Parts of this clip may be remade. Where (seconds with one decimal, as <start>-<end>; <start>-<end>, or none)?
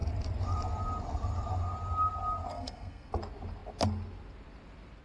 2.5-3.1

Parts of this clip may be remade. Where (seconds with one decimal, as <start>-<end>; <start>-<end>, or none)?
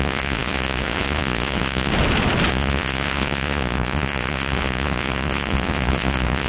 0.0-1.9; 2.5-6.5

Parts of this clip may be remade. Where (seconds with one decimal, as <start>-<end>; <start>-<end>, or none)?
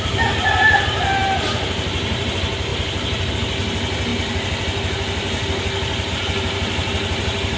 1.2-2.3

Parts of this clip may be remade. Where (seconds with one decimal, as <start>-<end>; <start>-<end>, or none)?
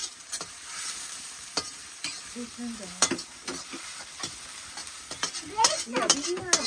0.0-4.0; 4.8-5.8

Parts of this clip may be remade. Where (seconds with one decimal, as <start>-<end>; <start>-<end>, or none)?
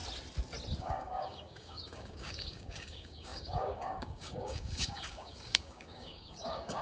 0.8-6.8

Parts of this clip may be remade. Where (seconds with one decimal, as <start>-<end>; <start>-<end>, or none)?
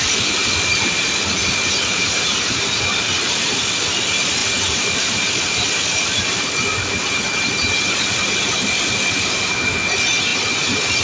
none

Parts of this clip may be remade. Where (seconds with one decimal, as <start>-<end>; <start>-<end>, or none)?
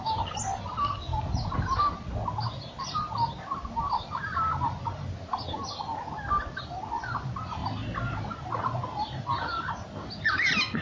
none